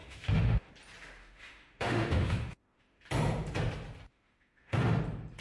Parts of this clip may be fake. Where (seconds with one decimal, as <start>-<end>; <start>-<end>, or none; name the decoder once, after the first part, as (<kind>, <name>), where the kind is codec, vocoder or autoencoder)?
0.0-0.7 (autoencoder, DAC-VAE); 1.2-3.0; 4.1-5.0